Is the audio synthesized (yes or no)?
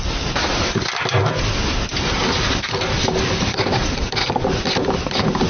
no